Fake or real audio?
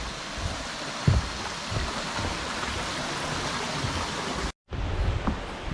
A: real